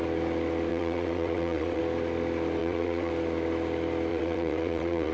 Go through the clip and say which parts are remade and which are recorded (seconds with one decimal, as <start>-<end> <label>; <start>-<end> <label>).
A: 0.0-0.7 recorded; 0.7-1.8 remade; 1.8-2.6 recorded; 2.6-3.1 remade; 3.1-4.1 recorded; 4.1-5.1 remade